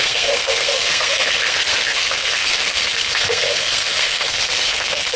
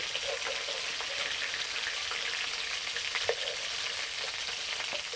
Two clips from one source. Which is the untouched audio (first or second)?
second